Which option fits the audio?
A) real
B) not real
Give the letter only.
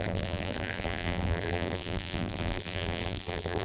B